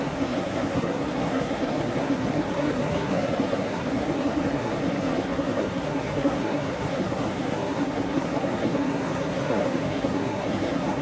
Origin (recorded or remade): remade